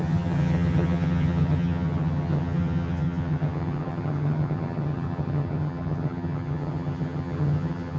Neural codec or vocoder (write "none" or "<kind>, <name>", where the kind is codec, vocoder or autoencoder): vocoder, HiFi-GAN